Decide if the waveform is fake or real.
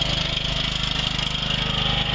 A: real